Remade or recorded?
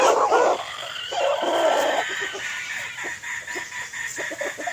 recorded